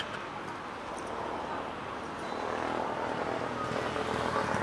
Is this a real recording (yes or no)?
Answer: yes